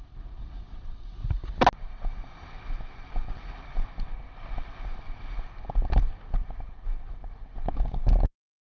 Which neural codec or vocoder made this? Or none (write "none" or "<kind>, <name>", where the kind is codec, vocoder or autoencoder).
none